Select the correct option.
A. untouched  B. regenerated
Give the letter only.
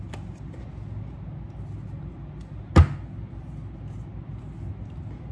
A